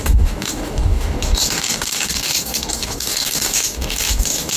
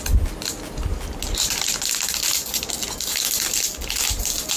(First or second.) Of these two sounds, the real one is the second